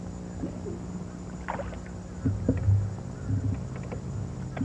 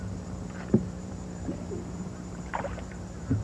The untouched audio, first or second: first